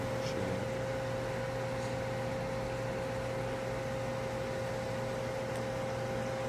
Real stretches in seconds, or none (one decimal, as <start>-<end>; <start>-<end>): 0.0-6.5